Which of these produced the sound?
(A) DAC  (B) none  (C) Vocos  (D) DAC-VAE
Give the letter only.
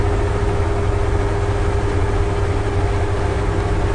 B